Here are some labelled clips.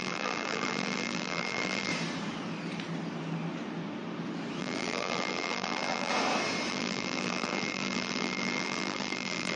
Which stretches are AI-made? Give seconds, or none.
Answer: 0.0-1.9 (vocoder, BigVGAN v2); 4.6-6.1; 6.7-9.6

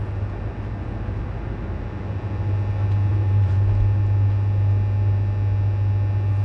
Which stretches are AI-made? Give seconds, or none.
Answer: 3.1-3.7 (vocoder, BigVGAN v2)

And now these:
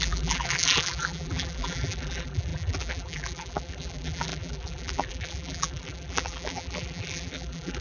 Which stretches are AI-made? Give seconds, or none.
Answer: 0.0-7.8 (vocoder, BigVGAN v2)

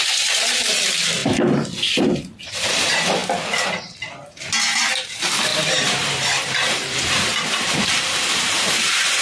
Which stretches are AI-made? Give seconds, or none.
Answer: 0.0-1.2 (vocoder, BigVGAN v2); 2.5-3.2; 5.0-9.2

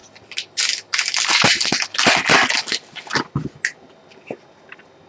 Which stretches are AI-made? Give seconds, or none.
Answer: none

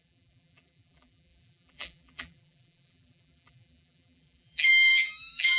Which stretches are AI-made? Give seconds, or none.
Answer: 0.0-5.6 (vocoder, BigVGAN v2)

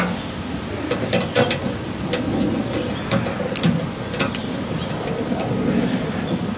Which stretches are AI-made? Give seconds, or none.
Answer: 4.4-5.1 (vocoder, BigVGAN v2)